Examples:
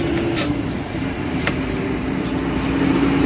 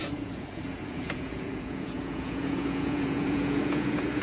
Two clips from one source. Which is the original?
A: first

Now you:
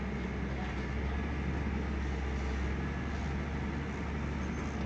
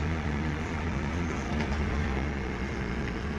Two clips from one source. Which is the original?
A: first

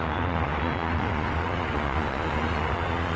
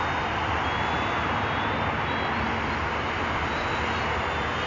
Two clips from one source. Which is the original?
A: second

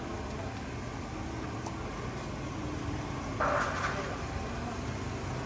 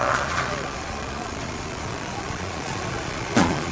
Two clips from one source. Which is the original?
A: first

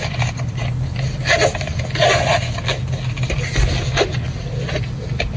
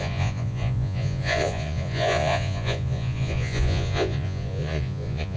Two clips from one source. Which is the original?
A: first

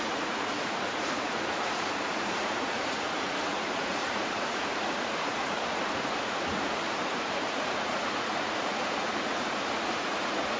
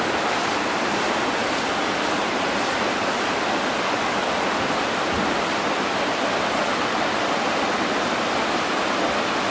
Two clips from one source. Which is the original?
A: second